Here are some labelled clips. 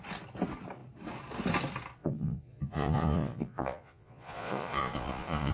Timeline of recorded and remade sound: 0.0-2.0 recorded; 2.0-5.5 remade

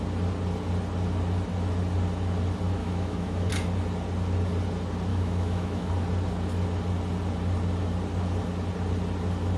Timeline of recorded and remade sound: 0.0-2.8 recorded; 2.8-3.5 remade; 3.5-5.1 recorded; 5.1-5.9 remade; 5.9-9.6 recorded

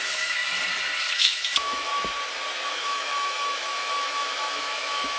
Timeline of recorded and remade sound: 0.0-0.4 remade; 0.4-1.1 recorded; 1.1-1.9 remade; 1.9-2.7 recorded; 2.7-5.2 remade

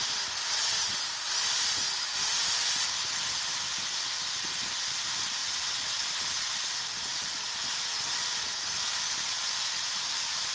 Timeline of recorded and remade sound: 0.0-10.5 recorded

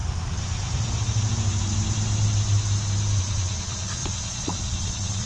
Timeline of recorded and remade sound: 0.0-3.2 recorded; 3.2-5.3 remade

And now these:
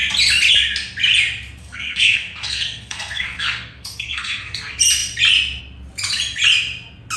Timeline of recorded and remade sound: 0.0-1.6 recorded; 1.6-4.6 remade; 4.6-7.2 recorded

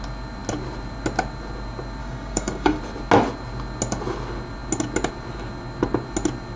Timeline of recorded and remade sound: 0.0-2.0 recorded; 2.0-2.8 remade; 2.8-6.6 recorded